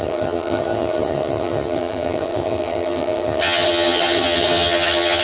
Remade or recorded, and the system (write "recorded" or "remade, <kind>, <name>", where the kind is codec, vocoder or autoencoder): remade, vocoder, HiFi-GAN